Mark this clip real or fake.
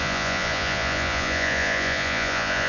fake